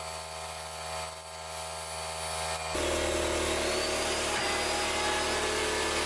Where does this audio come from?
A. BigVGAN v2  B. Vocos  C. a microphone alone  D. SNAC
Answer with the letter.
C